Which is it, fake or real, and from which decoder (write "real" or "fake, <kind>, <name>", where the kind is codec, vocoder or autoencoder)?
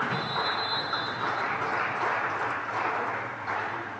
real